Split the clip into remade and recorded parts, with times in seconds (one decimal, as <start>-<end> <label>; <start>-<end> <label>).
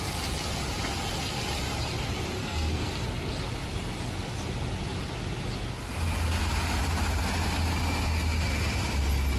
0.0-2.4 recorded; 2.4-2.9 remade; 2.9-9.4 recorded